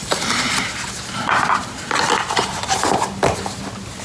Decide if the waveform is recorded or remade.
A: recorded